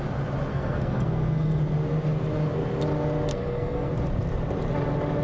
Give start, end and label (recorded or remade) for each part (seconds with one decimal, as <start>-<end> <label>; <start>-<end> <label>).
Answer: 0.0-0.5 recorded; 0.5-1.6 remade; 1.6-3.3 recorded; 3.3-3.9 remade; 3.9-5.2 recorded